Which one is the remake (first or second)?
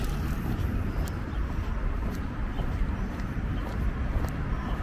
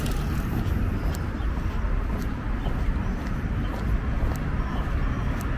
first